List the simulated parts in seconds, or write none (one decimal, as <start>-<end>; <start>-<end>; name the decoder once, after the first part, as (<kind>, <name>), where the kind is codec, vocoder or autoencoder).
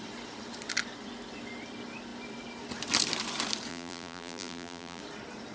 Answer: 3.7-5.0 (vocoder, BigVGAN v2)